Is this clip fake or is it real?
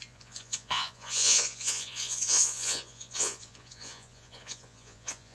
fake